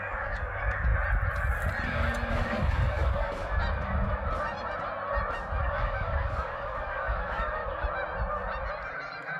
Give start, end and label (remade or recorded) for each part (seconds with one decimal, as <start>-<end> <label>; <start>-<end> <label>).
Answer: 0.0-0.9 remade; 0.9-2.3 recorded; 2.3-3.4 remade; 3.4-5.6 recorded; 5.6-7.6 remade; 7.6-9.4 recorded